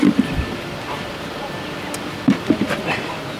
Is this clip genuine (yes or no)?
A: no